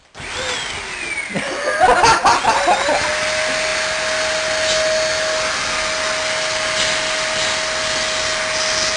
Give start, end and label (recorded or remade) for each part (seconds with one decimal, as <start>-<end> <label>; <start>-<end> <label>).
0.0-9.0 recorded